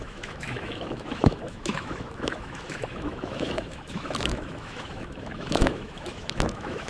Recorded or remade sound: remade